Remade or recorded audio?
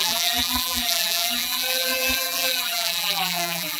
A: remade